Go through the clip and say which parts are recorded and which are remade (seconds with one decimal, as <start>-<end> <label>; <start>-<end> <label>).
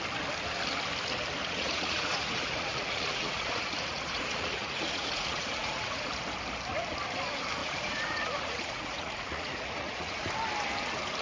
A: 0.0-1.4 recorded; 1.4-6.1 remade; 6.1-7.6 recorded; 7.6-10.3 remade; 10.3-11.2 recorded